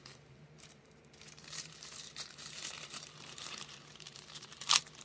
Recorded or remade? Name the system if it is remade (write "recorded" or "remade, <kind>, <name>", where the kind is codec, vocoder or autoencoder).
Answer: remade, vocoder, BigVGAN v2